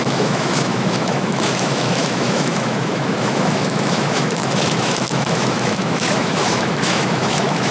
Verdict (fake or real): fake